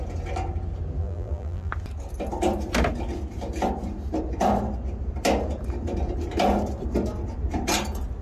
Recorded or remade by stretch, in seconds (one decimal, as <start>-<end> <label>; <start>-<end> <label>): 0.0-1.0 recorded; 1.0-1.7 remade; 1.7-8.2 recorded